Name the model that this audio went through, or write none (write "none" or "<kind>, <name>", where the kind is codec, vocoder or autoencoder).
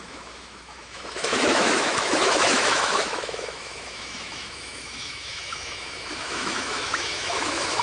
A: autoencoder, DAC-VAE